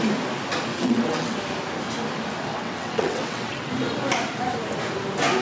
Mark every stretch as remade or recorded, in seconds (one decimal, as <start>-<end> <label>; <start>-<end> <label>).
0.0-0.7 recorded; 0.7-1.4 remade; 1.4-2.5 recorded; 2.5-3.7 remade; 3.7-5.4 recorded

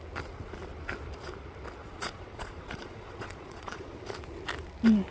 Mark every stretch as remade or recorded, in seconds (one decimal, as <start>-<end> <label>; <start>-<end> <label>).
0.0-1.8 recorded; 1.8-4.0 remade; 4.0-5.1 recorded

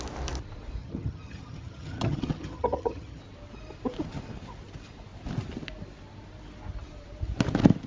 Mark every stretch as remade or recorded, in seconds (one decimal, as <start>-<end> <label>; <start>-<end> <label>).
0.0-0.8 recorded; 0.8-3.2 remade; 3.2-7.9 recorded